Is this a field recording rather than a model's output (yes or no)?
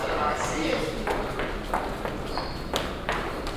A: yes